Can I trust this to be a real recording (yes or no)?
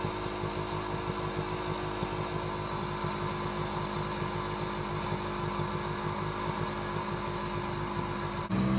yes